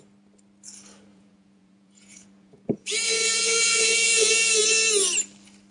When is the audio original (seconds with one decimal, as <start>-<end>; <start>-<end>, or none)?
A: 0.0-1.1; 4.5-5.7